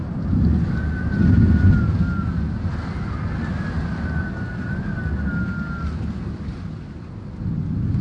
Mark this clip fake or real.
real